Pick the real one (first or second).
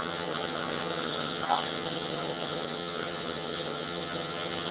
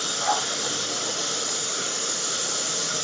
second